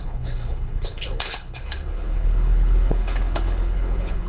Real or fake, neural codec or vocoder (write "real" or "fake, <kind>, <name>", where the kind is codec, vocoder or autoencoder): fake, codec, HILCodec